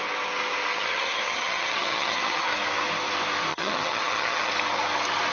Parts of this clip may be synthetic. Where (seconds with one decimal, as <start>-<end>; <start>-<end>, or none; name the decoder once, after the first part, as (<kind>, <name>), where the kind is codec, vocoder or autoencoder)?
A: 0.7-2.5 (vocoder, HiFi-GAN); 3.5-4.5